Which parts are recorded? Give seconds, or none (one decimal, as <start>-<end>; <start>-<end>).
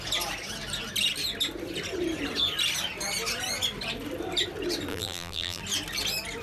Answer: 0.0-4.9; 5.6-6.4